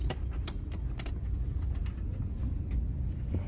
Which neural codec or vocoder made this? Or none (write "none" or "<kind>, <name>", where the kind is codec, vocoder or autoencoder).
none